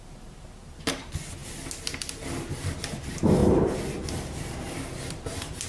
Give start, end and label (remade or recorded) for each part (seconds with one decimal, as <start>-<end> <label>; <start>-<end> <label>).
0.0-5.7 recorded